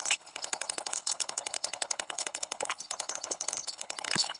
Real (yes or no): no